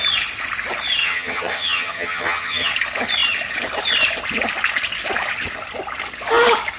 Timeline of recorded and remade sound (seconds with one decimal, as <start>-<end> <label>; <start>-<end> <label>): 0.0-1.0 recorded; 1.0-2.7 remade; 2.7-6.8 recorded